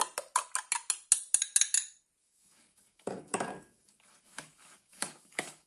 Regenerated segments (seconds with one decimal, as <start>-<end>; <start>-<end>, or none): 2.2-5.7